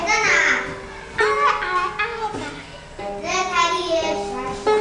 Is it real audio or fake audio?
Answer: real